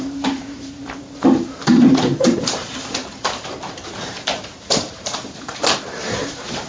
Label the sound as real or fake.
fake